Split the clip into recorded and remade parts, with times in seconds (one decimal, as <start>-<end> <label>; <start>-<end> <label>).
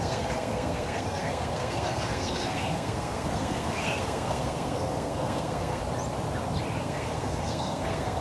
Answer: 0.0-5.8 remade; 5.8-6.8 recorded; 6.8-8.2 remade